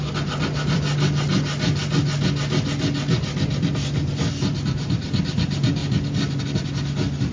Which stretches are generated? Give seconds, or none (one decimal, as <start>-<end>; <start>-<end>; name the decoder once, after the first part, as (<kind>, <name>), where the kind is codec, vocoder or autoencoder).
none